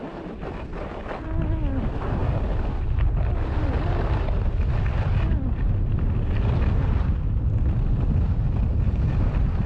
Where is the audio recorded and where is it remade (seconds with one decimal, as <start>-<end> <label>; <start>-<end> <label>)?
0.0-9.7 recorded